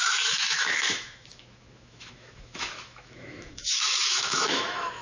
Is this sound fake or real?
fake